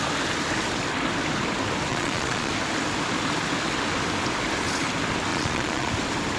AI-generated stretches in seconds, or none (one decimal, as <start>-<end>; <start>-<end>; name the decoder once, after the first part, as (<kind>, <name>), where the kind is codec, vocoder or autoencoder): 1.9-2.5 (vocoder, Vocos); 5.3-5.9